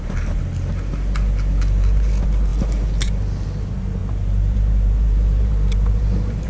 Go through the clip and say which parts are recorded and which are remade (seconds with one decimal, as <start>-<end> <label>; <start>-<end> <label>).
0.0-4.0 recorded; 4.0-6.5 remade